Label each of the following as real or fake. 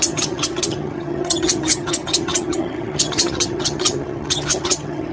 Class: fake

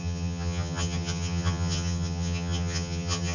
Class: fake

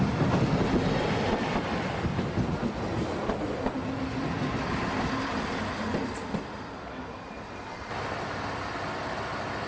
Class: real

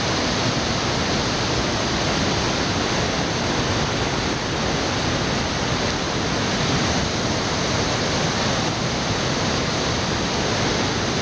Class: real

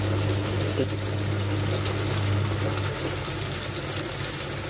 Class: real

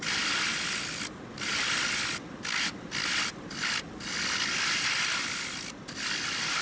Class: real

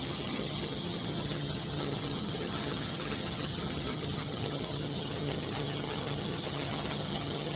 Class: fake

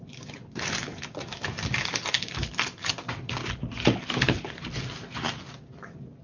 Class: real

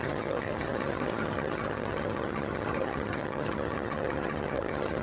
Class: fake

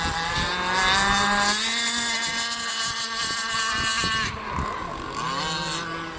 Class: real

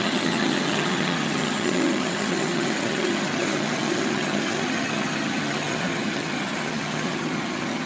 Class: fake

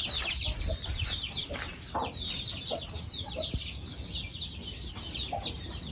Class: real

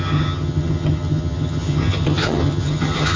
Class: fake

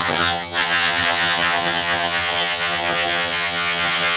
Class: fake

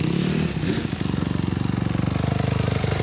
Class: real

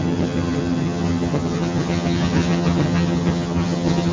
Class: fake